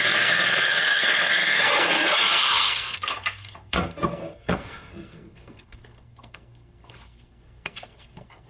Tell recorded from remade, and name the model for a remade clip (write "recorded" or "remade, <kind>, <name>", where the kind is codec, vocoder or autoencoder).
remade, codec, SNAC